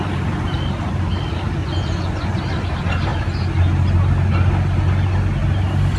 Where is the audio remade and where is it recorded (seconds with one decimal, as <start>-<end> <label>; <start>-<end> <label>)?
0.0-1.6 recorded; 1.6-2.4 remade; 2.4-6.0 recorded